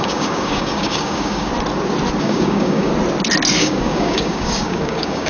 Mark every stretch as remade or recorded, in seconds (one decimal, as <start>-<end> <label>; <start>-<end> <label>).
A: 0.0-1.5 remade; 1.5-2.2 recorded; 2.2-2.9 remade; 2.9-3.6 recorded; 3.6-5.3 remade